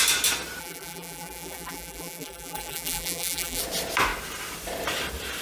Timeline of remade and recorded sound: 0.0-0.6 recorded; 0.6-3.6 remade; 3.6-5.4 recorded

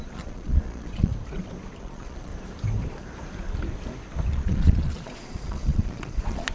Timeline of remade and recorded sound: 0.0-1.1 remade; 1.1-1.8 recorded; 1.8-2.3 remade; 2.3-4.3 recorded; 4.3-6.5 remade